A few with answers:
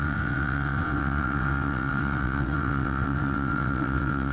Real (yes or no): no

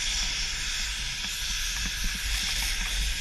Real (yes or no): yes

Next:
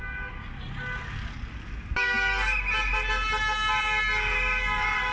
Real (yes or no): yes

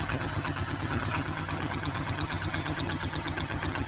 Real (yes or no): no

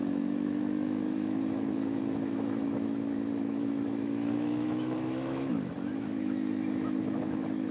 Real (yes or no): no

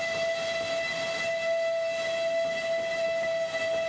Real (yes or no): yes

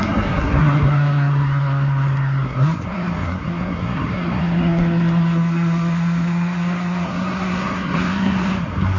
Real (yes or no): no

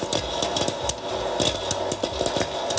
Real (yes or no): yes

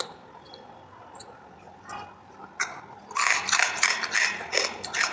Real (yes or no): yes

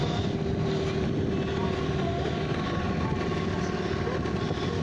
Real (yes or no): yes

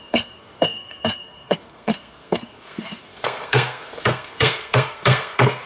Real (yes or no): no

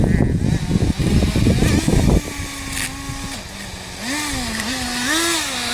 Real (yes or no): yes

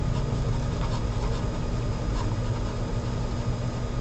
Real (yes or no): yes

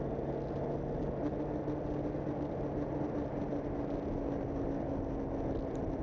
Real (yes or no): yes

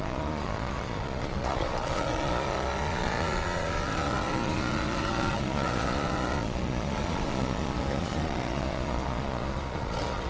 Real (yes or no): no